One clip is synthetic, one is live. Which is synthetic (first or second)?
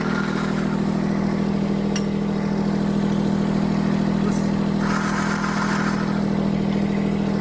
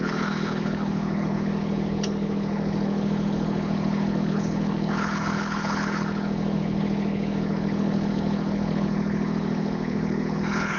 second